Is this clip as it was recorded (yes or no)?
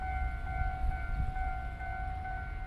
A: yes